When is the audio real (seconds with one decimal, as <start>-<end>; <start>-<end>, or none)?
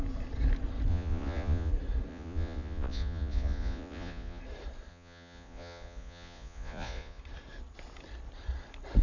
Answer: 0.0-0.9; 1.7-2.1; 4.4-4.9; 7.2-9.0